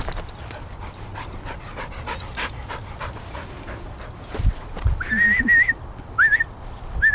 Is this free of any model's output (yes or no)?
yes